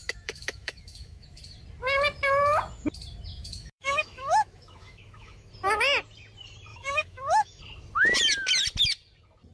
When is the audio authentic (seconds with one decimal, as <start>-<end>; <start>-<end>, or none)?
1.4-3.3; 5.5-6.7; 7.6-9.5